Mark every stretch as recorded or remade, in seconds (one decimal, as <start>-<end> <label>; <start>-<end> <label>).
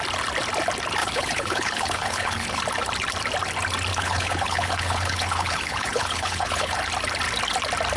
0.0-1.0 recorded; 1.0-2.6 remade; 2.6-3.9 recorded; 3.9-6.8 remade; 6.8-8.0 recorded